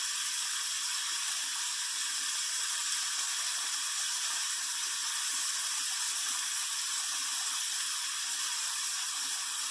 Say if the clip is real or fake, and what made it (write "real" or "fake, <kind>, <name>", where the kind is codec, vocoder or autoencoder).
fake, vocoder, BigVGAN v2